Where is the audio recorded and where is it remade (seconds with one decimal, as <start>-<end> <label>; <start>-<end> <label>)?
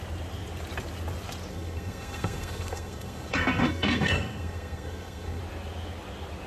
0.0-1.5 recorded; 1.5-5.4 remade; 5.4-6.5 recorded